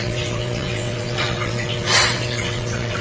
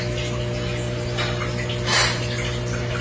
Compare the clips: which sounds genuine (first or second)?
second